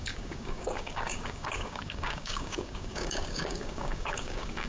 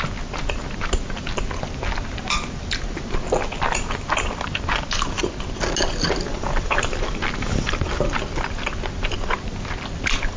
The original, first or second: second